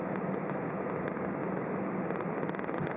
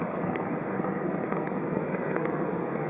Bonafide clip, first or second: first